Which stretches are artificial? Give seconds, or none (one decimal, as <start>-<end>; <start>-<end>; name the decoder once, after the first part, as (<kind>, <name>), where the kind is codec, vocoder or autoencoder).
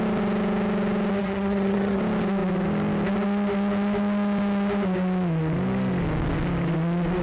1.2-2.0 (vocoder, HiFi-GAN)